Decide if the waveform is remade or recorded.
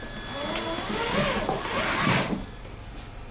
recorded